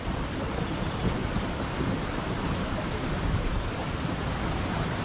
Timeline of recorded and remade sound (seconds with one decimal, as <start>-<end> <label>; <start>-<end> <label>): 0.0-5.0 recorded